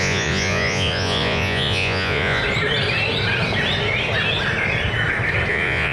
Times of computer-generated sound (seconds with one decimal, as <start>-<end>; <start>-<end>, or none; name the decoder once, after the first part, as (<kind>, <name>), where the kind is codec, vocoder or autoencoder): 0.0-2.4 (vocoder, Vocos); 5.5-5.9